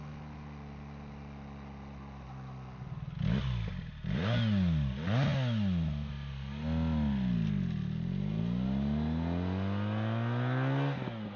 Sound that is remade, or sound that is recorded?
recorded